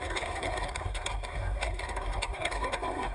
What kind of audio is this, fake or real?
fake